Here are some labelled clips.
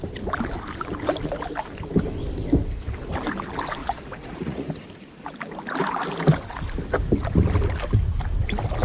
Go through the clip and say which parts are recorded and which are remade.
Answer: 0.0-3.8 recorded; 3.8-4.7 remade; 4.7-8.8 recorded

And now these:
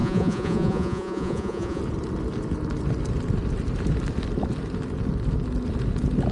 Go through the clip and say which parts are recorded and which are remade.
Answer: 0.0-1.8 remade; 1.8-6.3 recorded

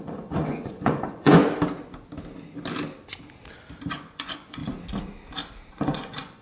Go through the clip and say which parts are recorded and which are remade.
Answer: 0.0-1.4 remade; 1.4-3.9 recorded; 3.9-4.6 remade; 4.6-5.7 recorded; 5.7-6.4 remade

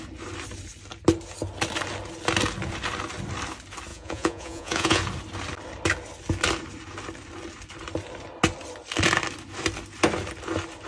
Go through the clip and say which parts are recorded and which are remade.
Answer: 0.0-3.9 recorded; 3.9-5.0 remade; 5.0-10.9 recorded